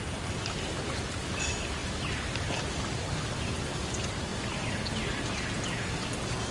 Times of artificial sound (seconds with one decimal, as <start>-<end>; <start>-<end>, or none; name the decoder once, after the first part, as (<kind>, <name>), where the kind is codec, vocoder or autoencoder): none